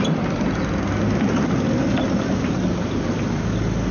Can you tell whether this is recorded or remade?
recorded